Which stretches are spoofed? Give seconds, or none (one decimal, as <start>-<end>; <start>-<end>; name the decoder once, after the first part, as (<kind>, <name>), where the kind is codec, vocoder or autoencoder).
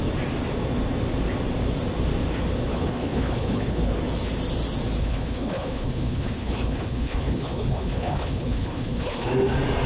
2.7-3.9 (codec, HILCodec); 5.0-9.3